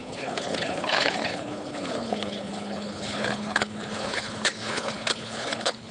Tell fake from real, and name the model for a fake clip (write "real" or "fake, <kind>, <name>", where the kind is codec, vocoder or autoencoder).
fake, codec, HILCodec